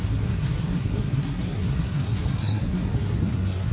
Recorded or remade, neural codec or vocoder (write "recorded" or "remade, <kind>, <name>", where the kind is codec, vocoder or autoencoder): remade, codec, SNAC